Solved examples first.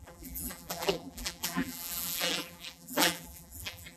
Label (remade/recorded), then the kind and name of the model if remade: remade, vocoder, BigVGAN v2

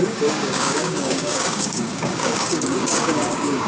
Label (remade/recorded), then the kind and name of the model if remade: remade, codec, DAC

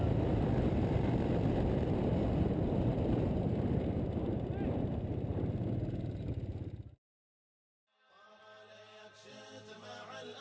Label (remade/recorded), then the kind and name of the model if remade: recorded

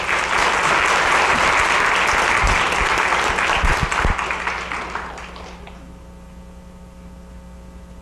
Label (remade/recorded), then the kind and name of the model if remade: recorded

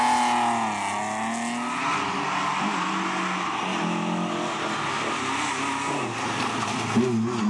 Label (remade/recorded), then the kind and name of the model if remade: recorded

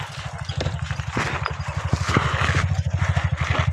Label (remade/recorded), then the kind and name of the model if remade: recorded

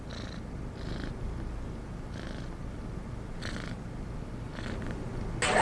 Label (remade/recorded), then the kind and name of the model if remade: recorded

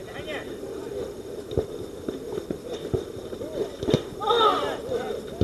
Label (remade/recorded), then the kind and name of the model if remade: recorded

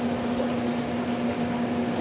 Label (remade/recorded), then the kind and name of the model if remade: recorded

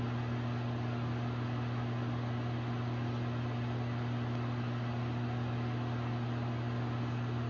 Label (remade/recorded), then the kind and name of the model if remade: recorded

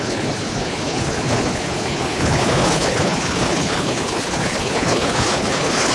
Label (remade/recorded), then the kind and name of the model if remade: remade, codec, HILCodec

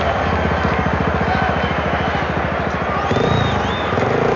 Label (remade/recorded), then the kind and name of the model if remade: recorded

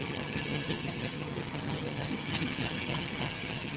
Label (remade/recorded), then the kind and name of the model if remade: remade, vocoder, HiFi-GAN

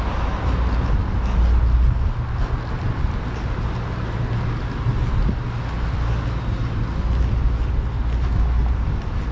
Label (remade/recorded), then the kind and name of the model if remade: recorded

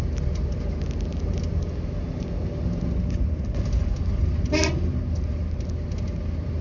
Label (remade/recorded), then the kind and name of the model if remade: recorded